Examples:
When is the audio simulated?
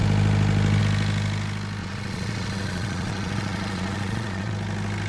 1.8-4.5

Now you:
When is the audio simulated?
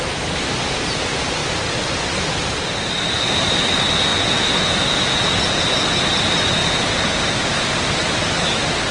4.1-5.6; 6.6-7.2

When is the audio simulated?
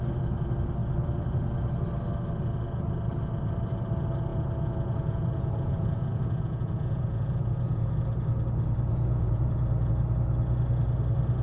4.3-7.9; 8.9-9.9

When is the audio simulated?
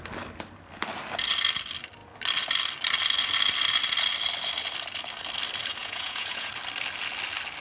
5.8-6.5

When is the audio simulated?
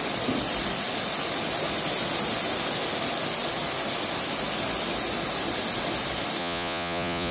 6.4-7.3